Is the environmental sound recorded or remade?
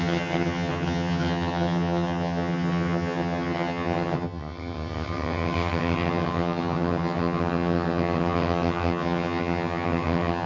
remade